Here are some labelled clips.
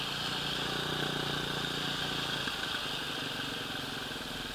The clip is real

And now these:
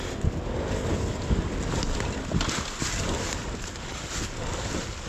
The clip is real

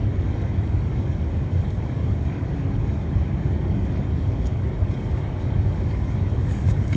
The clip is fake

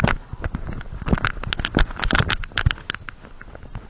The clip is real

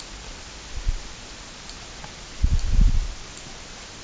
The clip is real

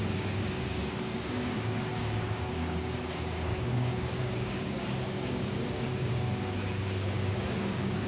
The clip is fake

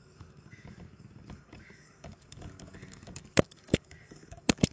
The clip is fake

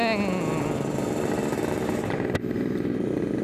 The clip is real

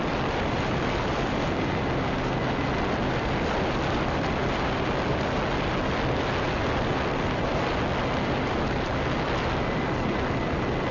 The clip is real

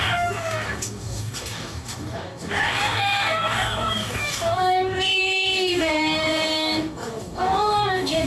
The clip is fake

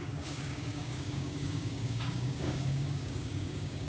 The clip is fake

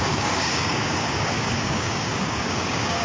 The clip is fake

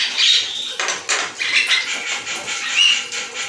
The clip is real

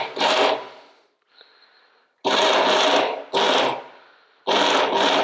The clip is real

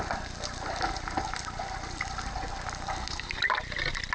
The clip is real